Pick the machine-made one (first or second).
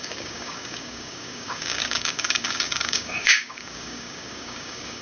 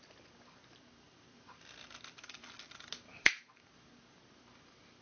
first